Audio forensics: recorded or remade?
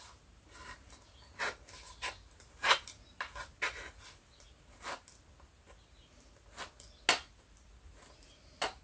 recorded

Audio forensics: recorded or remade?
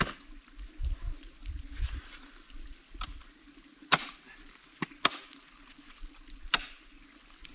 recorded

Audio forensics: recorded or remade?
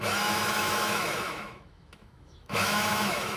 remade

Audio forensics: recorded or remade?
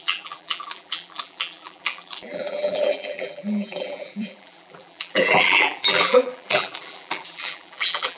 remade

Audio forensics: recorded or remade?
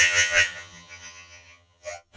remade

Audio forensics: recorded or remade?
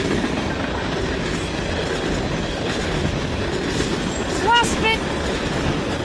recorded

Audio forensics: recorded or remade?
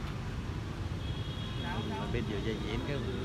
recorded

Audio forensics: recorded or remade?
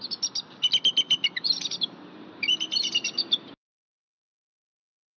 recorded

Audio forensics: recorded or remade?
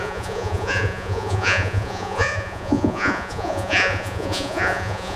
remade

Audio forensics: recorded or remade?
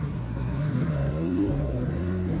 remade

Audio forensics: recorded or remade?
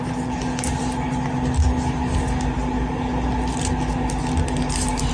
recorded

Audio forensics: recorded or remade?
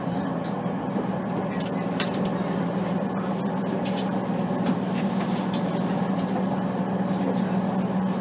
recorded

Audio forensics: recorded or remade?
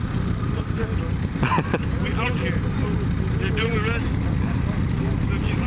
recorded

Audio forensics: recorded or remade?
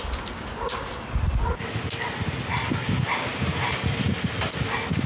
recorded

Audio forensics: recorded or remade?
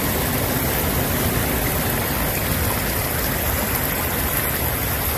recorded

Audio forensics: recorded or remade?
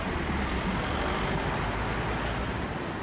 recorded